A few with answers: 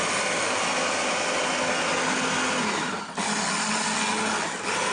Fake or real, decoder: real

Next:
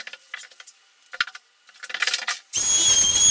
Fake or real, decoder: real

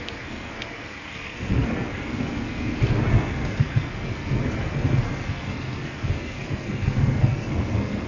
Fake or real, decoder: fake, codec, SNAC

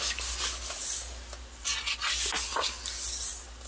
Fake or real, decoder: real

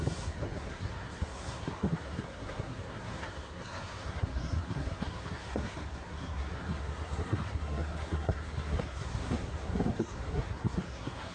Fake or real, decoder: fake, codec, SNAC